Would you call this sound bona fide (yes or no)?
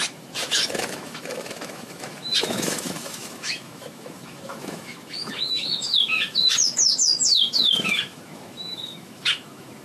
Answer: no